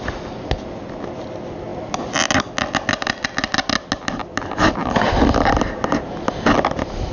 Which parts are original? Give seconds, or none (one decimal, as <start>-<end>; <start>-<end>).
0.0-7.1